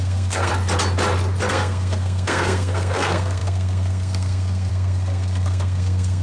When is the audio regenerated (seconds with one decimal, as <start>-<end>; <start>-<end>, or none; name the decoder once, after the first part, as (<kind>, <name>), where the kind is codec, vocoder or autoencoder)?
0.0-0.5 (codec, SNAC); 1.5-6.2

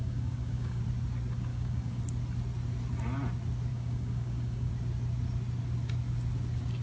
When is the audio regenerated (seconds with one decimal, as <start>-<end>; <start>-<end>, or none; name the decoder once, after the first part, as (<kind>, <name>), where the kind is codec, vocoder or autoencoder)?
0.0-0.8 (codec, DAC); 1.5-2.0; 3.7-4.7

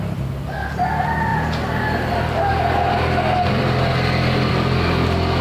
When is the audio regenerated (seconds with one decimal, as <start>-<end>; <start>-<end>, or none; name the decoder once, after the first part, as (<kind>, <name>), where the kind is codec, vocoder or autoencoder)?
none